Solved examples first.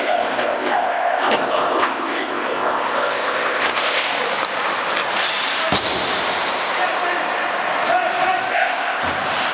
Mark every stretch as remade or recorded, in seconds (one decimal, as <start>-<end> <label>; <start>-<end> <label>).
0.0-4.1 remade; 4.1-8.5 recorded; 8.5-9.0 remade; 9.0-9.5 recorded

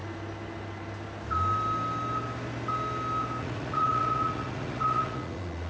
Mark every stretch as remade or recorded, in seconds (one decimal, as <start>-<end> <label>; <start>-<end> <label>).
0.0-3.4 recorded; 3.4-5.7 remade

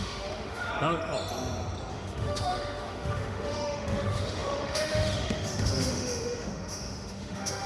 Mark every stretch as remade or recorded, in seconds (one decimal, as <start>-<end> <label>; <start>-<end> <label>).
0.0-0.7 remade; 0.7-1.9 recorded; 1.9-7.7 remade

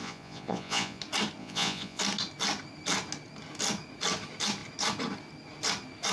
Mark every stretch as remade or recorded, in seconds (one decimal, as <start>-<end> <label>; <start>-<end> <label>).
0.0-1.0 remade; 1.0-1.4 recorded; 1.4-2.0 remade; 2.0-6.1 recorded